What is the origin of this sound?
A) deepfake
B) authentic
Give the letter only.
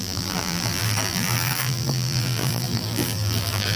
A